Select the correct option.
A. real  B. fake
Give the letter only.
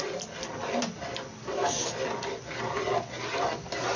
A